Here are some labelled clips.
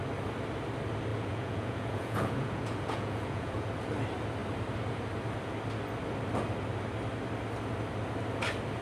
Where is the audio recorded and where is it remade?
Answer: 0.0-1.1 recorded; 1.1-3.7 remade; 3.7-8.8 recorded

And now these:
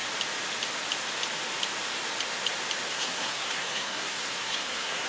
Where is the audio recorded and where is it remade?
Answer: 0.0-2.9 recorded; 2.9-5.1 remade